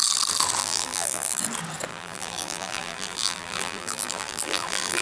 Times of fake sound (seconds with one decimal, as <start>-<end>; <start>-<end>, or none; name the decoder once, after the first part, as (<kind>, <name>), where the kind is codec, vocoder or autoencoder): 0.6-1.4 (vocoder, BigVGAN v2); 1.9-5.0